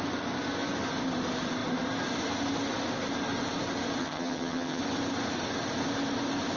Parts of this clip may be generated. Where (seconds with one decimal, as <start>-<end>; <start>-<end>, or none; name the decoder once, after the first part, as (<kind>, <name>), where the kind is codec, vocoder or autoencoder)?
4.0-4.8 (vocoder, HiFi-GAN)